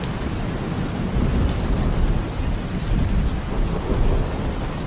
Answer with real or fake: real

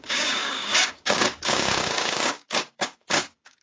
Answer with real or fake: fake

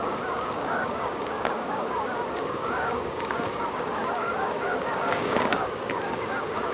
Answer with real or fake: fake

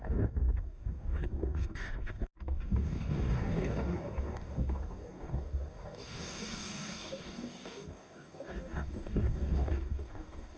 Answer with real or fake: fake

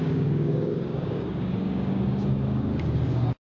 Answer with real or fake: fake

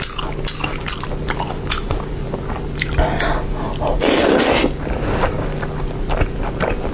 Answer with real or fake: real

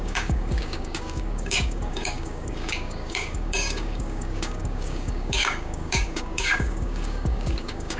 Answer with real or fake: fake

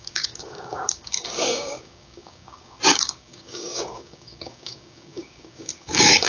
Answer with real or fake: fake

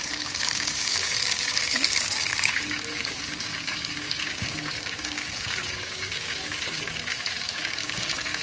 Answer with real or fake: fake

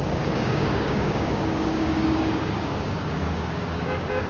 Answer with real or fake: fake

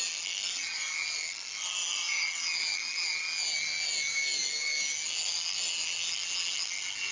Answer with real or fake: real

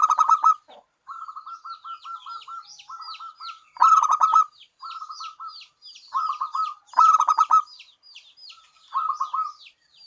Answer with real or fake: real